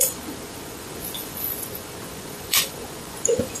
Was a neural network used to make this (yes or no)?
yes